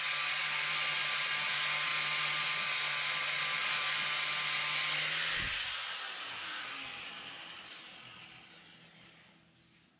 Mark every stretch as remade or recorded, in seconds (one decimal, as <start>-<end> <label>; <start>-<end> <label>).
0.0-10.0 recorded